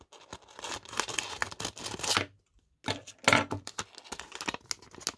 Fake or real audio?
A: real